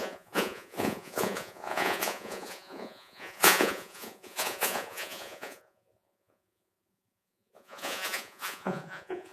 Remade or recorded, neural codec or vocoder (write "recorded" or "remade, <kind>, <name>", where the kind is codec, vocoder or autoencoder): remade, vocoder, Vocos